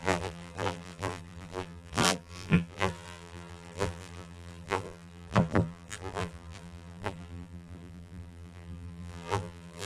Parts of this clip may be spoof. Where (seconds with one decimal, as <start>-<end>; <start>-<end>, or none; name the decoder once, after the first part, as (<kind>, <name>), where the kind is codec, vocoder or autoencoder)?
0.0-9.9 (vocoder, BigVGAN v2)